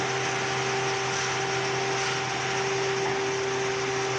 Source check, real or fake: real